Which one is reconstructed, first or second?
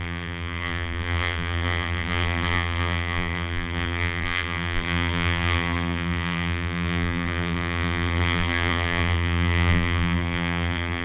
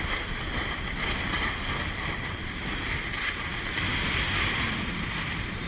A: first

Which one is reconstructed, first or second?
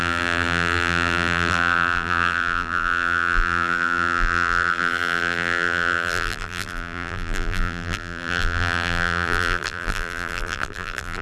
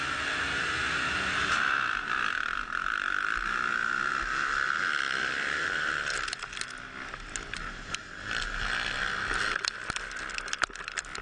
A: first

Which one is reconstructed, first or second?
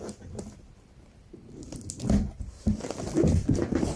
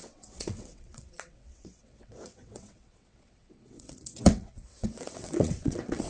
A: second